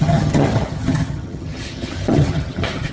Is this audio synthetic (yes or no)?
yes